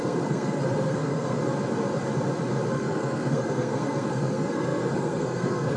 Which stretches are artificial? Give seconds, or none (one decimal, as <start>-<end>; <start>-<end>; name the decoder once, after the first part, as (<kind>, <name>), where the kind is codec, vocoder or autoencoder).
0.0-1.4 (codec, SNAC); 2.7-5.8